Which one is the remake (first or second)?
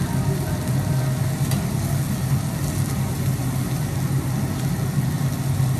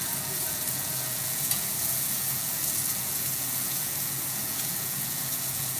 second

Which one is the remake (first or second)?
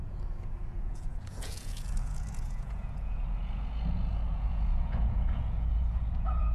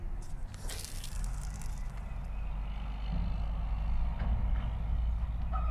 first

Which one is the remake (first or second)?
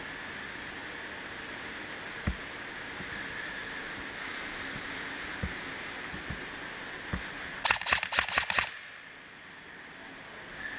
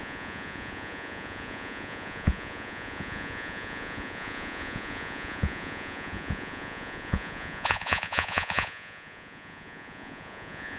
second